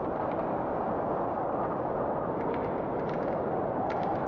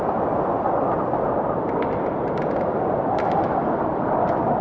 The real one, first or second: first